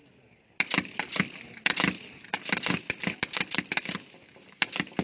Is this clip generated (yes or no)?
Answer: no